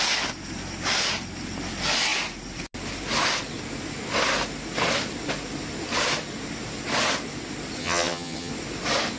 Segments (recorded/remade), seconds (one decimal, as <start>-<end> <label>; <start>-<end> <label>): 0.0-7.8 recorded; 7.8-8.5 remade; 8.5-9.2 recorded

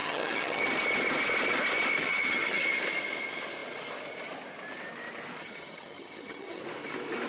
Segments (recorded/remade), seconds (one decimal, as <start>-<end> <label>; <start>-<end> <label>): 0.0-0.6 remade; 0.6-2.0 recorded; 2.0-2.6 remade; 2.6-5.4 recorded; 5.4-6.6 remade; 6.6-7.3 recorded

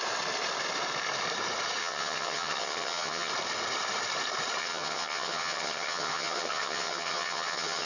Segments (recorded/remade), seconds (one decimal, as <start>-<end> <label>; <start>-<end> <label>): 0.0-1.8 recorded; 1.8-3.3 remade; 3.3-4.6 recorded; 4.6-7.9 remade